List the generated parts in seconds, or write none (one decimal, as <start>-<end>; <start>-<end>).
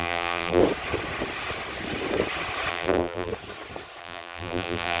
0.0-0.6; 2.7-3.3; 4.0-5.0